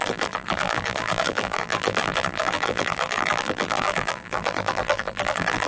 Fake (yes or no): yes